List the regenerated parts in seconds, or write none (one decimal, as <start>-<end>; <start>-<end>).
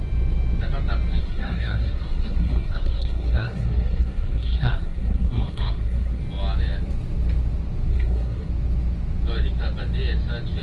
1.2-6.2; 7.9-8.5